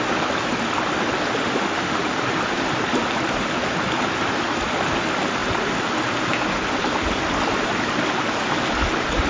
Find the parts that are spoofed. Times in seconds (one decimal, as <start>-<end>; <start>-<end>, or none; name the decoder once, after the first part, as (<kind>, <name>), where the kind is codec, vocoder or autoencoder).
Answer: 1.4-2.0 (autoencoder, DAC-VAE)